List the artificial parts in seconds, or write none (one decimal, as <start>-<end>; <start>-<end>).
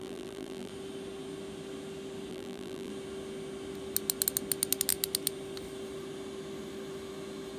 0.0-0.7; 2.3-2.9